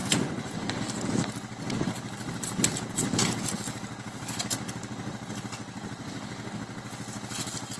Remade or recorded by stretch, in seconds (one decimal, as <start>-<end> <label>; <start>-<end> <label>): 0.0-0.8 remade; 0.8-7.8 recorded